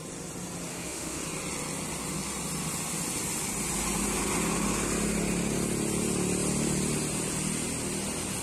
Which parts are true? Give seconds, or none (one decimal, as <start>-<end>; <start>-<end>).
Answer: 0.0-0.7; 1.2-8.4